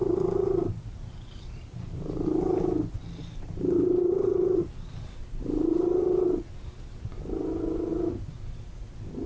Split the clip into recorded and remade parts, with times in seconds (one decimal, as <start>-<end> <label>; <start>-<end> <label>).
0.0-4.7 remade; 4.7-9.3 recorded